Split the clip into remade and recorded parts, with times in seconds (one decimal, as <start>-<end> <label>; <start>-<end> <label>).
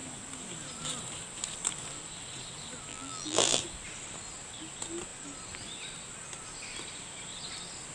0.0-2.9 recorded; 2.9-3.6 remade; 3.6-7.9 recorded